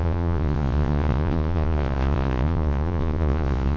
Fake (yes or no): yes